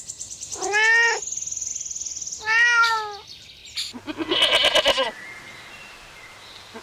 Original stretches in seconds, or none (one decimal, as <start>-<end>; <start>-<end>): 0.0-6.8